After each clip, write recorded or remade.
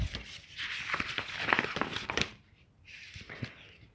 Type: recorded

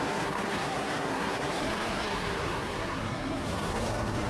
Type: remade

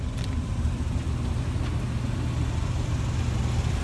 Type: recorded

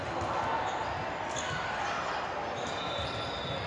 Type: recorded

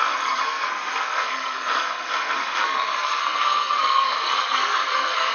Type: remade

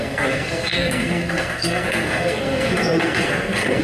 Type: remade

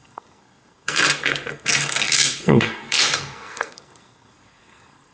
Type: remade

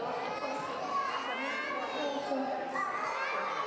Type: recorded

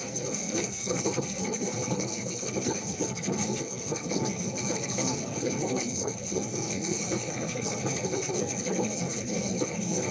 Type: remade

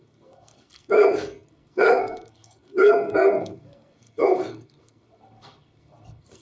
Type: remade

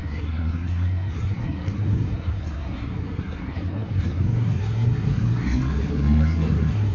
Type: remade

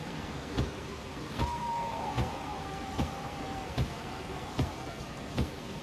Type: remade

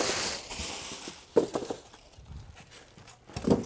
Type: recorded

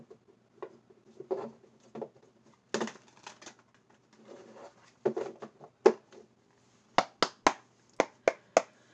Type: recorded